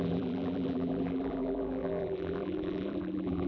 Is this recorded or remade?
remade